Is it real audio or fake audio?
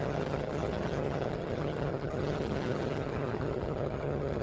fake